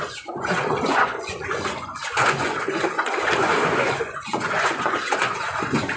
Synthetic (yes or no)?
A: yes